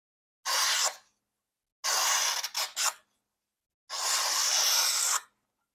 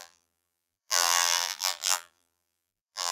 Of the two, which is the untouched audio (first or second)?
first